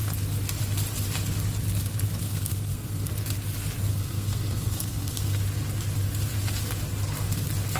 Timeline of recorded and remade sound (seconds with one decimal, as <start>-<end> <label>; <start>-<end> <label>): 0.0-2.2 recorded; 2.2-3.1 remade; 3.1-3.9 recorded; 3.9-5.4 remade; 5.4-7.8 recorded